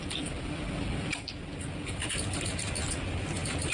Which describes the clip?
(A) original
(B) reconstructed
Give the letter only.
A